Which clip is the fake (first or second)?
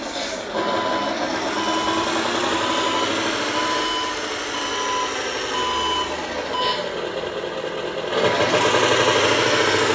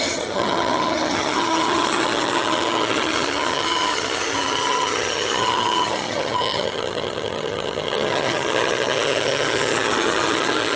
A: second